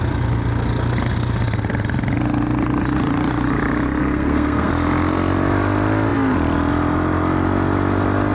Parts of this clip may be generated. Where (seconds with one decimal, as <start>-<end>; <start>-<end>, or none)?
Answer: 4.0-4.7